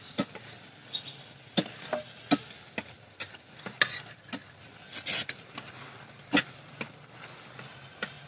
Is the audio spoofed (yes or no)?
no